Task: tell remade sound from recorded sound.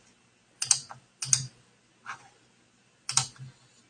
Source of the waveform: recorded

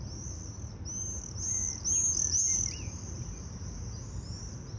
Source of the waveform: recorded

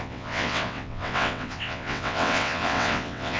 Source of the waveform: remade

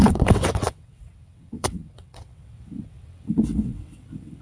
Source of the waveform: remade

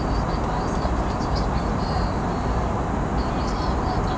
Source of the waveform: recorded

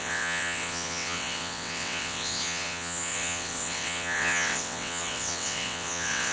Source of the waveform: remade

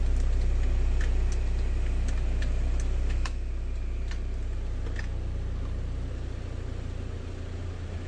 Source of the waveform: recorded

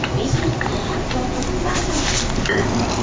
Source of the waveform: recorded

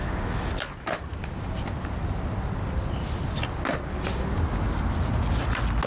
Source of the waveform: recorded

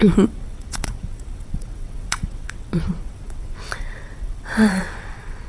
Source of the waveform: remade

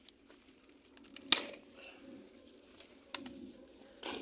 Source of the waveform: recorded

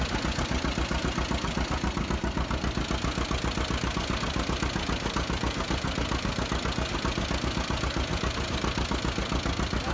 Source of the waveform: recorded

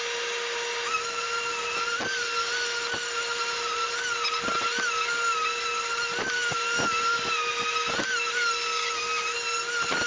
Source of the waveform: recorded